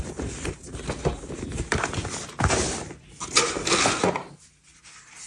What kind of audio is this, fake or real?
real